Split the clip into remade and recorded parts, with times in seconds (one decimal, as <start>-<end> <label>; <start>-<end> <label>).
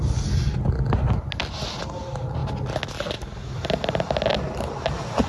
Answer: 0.0-5.3 recorded